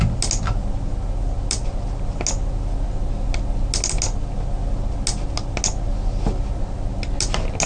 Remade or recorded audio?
recorded